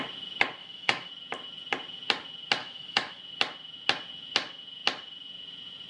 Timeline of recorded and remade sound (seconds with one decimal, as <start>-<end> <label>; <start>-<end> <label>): 0.0-0.6 recorded; 0.6-1.1 remade; 1.1-2.6 recorded; 2.6-3.2 remade; 3.2-5.9 recorded